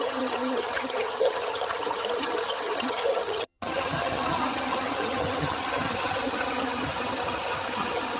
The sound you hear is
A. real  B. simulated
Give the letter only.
B